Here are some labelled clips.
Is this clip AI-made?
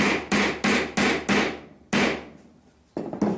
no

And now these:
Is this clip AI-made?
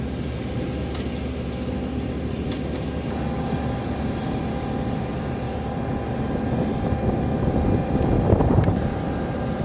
no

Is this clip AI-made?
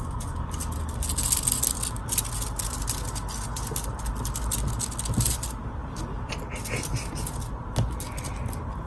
no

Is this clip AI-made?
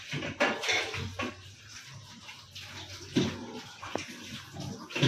no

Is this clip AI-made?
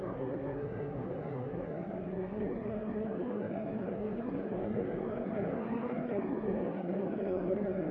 yes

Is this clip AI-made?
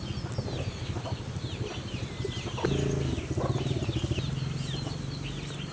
no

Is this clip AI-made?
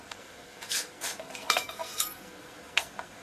yes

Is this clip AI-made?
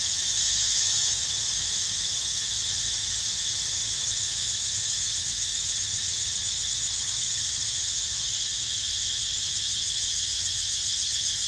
yes